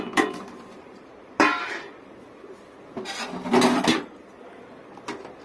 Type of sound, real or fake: real